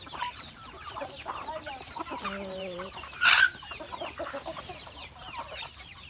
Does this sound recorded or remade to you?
remade